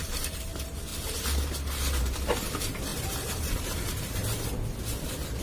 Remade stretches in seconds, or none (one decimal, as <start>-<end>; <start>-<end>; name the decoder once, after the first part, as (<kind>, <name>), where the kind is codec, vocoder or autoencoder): 0.0-0.9 (vocoder, BigVGAN v2); 2.0-4.2